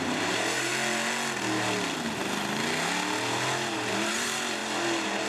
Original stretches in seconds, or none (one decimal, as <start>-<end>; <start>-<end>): 0.7-3.9; 4.6-5.3